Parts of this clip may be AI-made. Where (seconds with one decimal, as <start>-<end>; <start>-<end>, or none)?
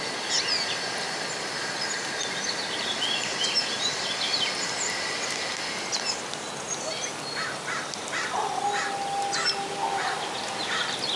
none